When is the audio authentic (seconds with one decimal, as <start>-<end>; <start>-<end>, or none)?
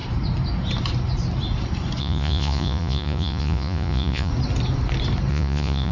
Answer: 0.0-2.0; 4.3-5.3